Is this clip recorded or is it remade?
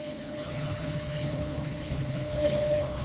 remade